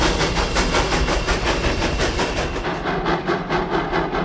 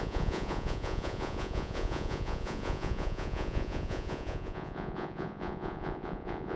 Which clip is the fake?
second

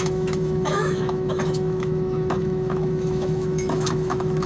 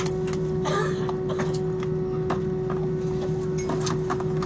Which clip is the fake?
first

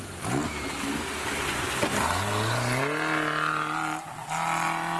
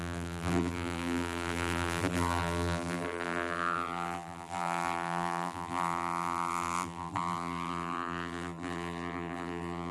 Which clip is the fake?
second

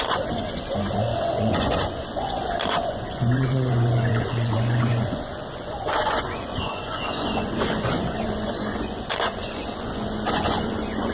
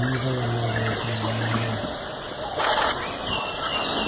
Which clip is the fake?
first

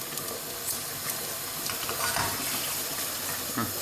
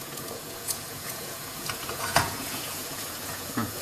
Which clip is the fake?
second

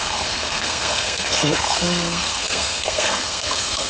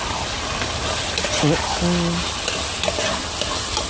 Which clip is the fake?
first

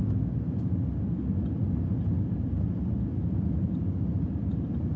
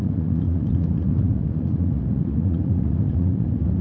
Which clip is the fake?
second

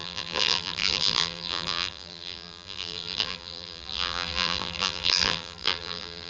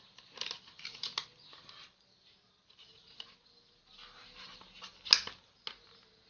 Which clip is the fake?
first